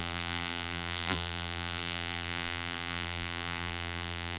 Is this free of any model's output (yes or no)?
no